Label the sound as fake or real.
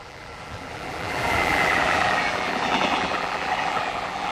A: fake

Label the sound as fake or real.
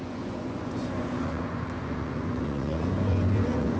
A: fake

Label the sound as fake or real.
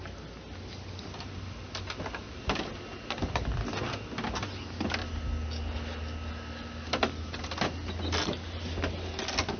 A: real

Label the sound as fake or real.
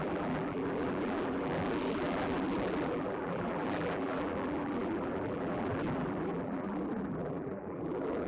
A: fake